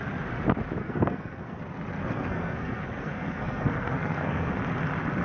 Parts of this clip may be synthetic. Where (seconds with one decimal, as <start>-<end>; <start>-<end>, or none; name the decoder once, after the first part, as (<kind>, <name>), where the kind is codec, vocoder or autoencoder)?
0.8-1.6 (codec, SNAC); 2.0-4.5